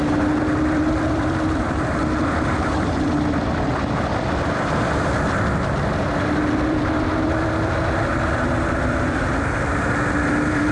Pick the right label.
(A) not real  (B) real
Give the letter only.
A